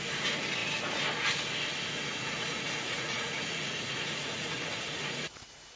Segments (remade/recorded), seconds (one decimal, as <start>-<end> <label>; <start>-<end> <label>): 0.0-2.1 recorded; 2.1-5.8 remade